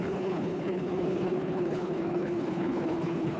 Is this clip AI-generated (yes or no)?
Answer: yes